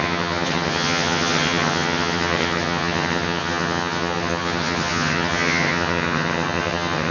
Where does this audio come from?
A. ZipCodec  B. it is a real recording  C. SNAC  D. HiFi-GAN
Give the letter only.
D